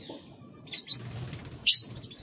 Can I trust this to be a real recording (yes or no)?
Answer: yes